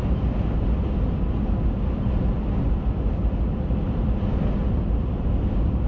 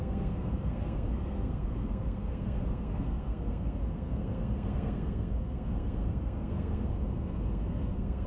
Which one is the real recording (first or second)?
first